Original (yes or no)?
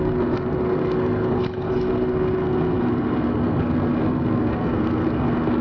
no